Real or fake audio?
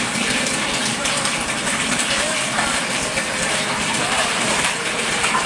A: fake